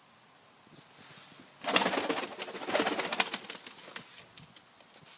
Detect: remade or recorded recorded